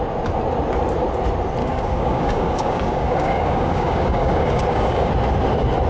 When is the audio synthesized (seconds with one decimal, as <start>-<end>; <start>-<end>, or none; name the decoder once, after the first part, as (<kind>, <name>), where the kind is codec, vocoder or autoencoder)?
1.6-5.1 (codec, DAC)